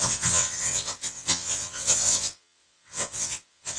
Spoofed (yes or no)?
yes